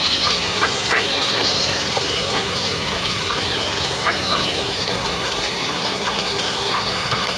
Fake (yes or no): yes